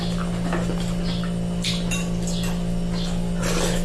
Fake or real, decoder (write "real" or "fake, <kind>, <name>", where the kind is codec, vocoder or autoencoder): real